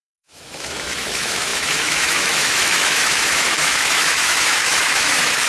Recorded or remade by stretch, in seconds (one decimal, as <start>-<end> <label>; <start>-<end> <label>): 0.0-5.5 remade